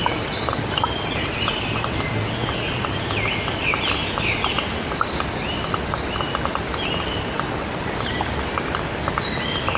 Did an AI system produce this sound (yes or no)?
no